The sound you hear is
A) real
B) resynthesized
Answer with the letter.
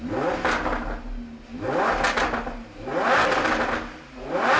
A